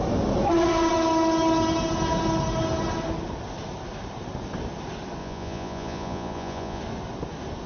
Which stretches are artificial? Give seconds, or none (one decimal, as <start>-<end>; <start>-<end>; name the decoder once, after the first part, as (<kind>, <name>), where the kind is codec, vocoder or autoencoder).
5.2-6.8 (vocoder, Vocos)